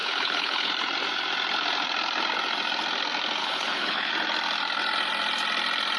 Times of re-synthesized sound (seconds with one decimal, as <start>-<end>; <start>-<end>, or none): 0.0-0.7; 3.4-4.1